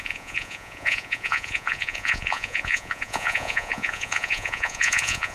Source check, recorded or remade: remade